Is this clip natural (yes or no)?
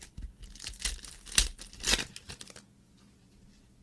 yes